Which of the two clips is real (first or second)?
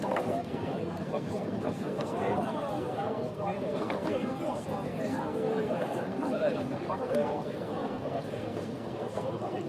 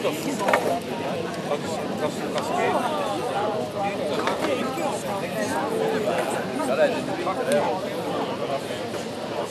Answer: second